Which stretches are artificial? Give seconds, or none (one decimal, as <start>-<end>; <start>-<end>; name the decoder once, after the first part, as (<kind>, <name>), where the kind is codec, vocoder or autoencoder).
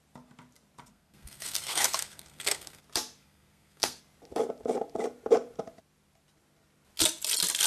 0.9-2.8 (codec, SNAC); 3.2-4.0